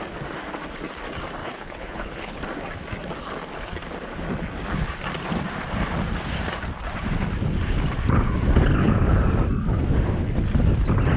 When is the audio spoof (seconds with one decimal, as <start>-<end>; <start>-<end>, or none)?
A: 1.4-2.4